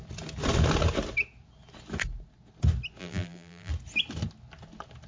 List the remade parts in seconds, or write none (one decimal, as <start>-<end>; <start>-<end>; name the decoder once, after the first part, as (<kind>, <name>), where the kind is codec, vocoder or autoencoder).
3.0-3.7 (vocoder, BigVGAN v2)